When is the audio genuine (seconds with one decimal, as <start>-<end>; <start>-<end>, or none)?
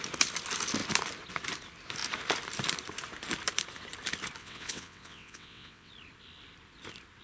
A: 0.0-4.4; 5.9-7.2